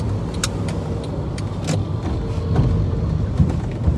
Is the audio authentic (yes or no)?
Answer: yes